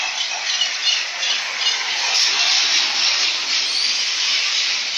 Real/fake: real